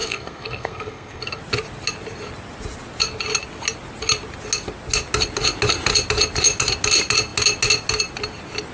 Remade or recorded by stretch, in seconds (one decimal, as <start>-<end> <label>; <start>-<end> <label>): 0.0-1.4 remade; 1.4-8.7 recorded